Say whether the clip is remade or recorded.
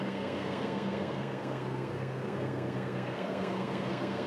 remade